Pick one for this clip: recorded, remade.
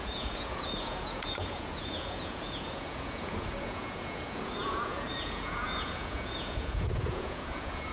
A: remade